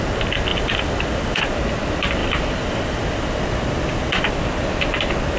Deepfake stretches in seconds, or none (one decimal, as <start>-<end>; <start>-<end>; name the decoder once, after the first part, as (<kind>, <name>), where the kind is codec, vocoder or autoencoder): 0.5-1.4 (vocoder, BigVGAN v2); 2.2-4.3